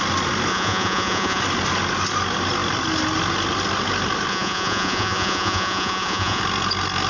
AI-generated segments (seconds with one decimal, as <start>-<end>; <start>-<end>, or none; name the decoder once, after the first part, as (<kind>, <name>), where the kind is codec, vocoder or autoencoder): 0.5-1.4 (vocoder, Vocos); 4.3-6.4